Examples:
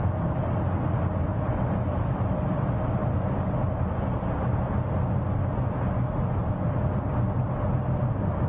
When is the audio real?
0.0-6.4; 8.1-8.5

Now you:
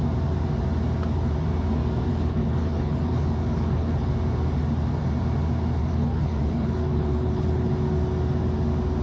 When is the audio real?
0.0-2.1; 4.1-5.8; 7.7-9.0

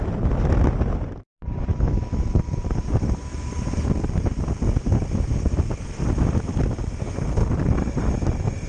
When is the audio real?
0.0-1.7; 3.9-8.7

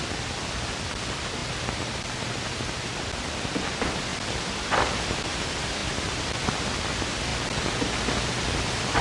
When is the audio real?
0.0-1.4; 2.1-4.1; 4.7-5.8; 6.5-7.3; 8.6-9.0

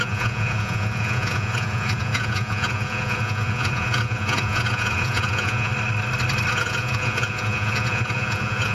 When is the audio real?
5.7-6.5

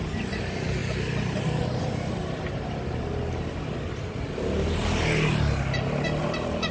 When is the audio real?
0.8-1.8; 2.2-6.2

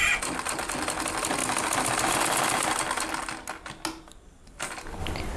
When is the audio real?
0.0-5.4

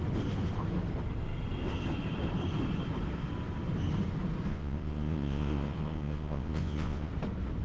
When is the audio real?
0.0-4.5; 7.1-7.6